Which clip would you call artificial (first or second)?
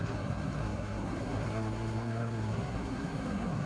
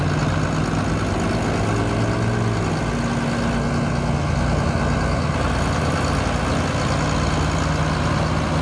first